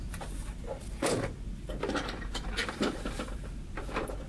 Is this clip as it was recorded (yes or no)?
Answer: yes